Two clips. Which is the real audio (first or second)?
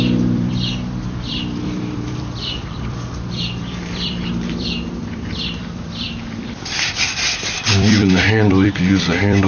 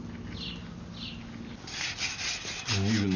second